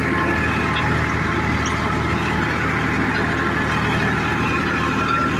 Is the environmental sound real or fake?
real